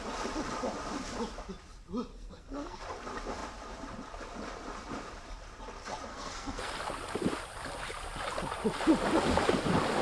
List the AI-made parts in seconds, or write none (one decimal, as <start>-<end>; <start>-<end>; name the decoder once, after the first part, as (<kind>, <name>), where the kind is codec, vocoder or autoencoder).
2.1-2.8 (codec, SNAC); 6.1-6.7